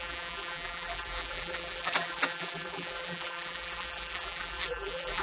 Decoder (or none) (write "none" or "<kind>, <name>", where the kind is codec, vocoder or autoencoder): vocoder, BigVGAN v2